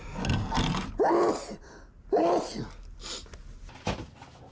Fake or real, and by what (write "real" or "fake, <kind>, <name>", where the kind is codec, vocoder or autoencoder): real